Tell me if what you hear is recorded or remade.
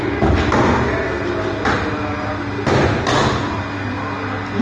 recorded